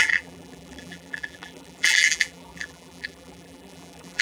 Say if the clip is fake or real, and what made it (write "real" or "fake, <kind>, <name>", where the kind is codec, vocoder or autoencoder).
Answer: fake, vocoder, BigVGAN v2